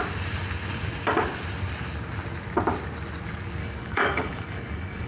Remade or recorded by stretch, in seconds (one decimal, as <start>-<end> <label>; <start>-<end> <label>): 0.0-3.6 recorded; 3.6-5.1 remade